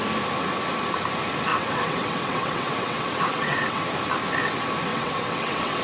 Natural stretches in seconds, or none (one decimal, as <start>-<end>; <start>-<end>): 0.0-1.5; 3.8-4.9